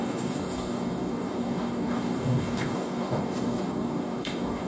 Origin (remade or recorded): remade